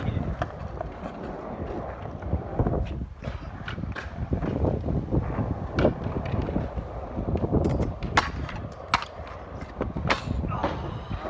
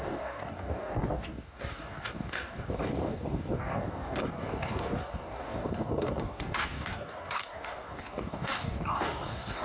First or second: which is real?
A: first